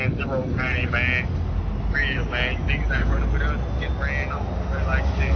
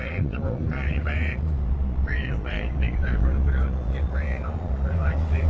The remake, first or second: second